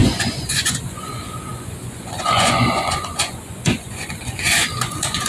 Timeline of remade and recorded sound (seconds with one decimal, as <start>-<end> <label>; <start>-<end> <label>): 0.0-5.3 remade